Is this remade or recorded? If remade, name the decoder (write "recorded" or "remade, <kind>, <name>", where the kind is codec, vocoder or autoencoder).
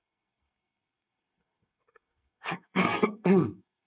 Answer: remade, codec, SNAC